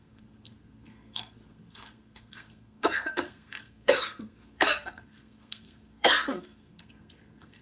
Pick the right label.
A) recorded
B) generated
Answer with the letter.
B